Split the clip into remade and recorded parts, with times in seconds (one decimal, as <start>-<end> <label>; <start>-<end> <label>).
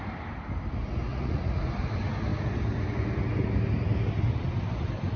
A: 0.0-1.1 recorded; 1.1-1.6 remade; 1.6-5.2 recorded